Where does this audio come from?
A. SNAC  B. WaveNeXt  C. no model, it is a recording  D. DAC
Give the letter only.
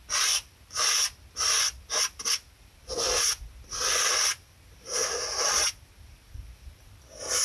C